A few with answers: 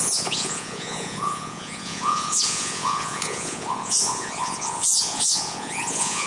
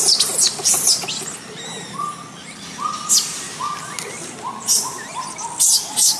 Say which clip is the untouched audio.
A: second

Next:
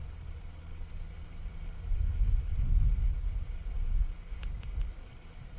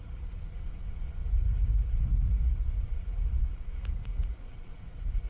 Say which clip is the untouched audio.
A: first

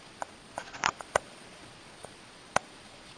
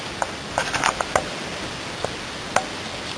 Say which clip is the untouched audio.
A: second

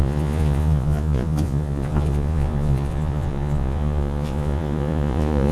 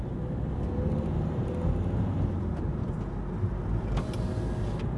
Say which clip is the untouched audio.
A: second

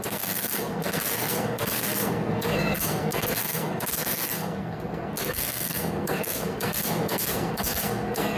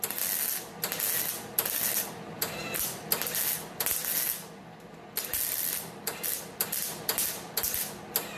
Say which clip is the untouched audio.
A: second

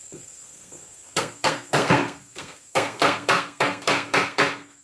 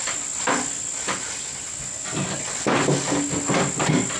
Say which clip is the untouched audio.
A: second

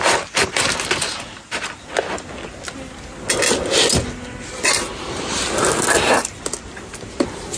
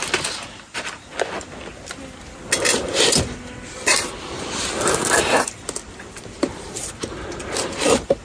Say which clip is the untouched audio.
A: first